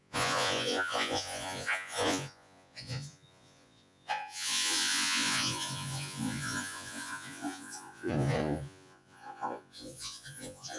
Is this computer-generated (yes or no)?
yes